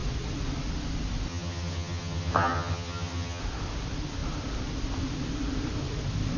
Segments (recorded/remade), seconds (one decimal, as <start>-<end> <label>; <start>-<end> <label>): 0.0-1.3 recorded; 1.3-3.4 remade; 3.4-6.4 recorded